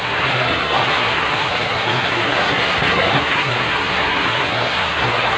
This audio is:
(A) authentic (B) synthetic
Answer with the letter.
B